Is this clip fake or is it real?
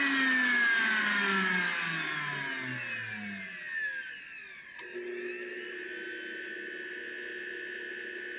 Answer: real